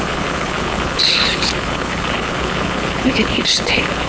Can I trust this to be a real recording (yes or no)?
no